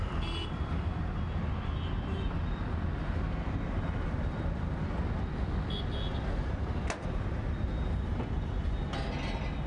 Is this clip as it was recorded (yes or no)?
yes